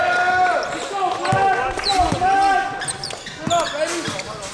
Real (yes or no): yes